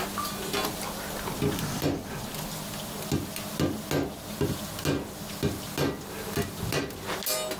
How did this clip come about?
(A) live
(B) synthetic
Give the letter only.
A